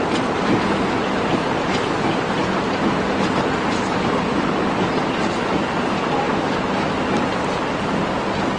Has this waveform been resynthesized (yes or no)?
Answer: no